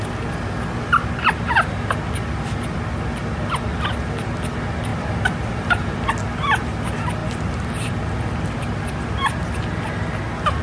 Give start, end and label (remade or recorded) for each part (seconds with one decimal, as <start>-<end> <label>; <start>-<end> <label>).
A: 0.0-4.9 recorded; 4.9-6.1 remade; 6.1-7.2 recorded; 7.2-7.9 remade; 7.9-10.6 recorded